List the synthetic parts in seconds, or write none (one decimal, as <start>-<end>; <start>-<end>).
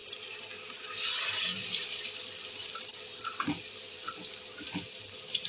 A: 0.0-2.2; 2.9-5.5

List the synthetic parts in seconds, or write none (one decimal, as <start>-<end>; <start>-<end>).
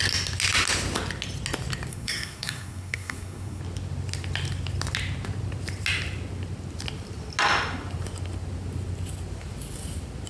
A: 1.9-3.6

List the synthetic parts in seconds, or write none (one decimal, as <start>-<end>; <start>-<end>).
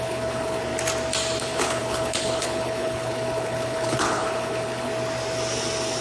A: 0.0-0.7; 1.4-4.9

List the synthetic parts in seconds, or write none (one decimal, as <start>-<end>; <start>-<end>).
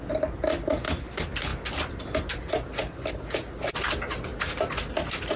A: none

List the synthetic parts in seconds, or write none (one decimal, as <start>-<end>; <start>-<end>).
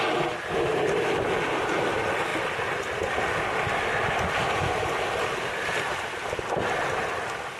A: none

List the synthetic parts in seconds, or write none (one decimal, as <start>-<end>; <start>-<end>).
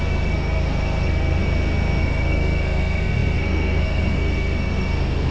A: 0.0-1.4; 2.0-5.3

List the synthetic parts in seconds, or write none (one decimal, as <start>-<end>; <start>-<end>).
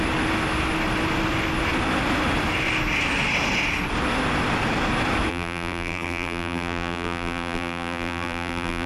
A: 5.3-8.9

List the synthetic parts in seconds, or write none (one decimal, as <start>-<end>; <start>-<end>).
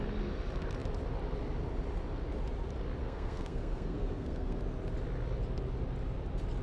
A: 3.0-4.6